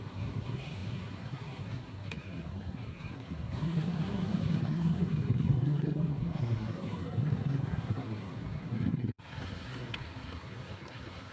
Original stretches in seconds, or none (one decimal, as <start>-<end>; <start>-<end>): none